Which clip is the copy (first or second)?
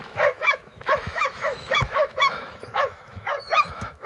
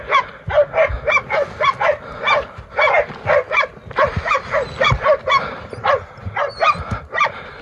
first